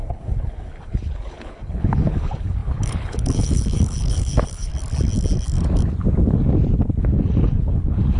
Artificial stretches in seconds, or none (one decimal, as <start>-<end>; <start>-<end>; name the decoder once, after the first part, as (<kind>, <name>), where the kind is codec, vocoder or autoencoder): 0.0-4.7 (codec, HILCodec); 7.0-8.2